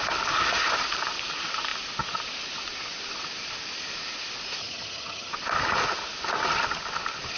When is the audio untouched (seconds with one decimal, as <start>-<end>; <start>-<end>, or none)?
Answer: 0.0-4.6; 5.3-7.4